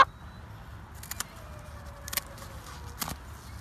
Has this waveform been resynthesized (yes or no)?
no